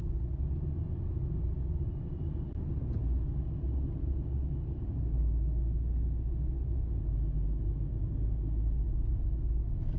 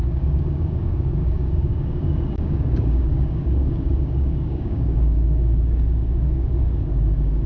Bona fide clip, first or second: first